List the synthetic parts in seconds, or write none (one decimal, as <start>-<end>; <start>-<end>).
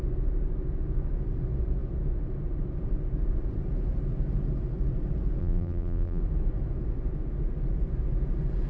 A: 5.4-6.2